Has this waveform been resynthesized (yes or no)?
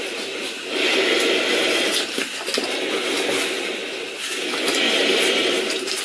no